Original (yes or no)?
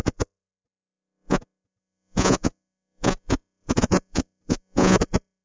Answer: no